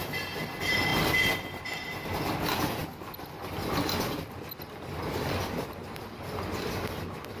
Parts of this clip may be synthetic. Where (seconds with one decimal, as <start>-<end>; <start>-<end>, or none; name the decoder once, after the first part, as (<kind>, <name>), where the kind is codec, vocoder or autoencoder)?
none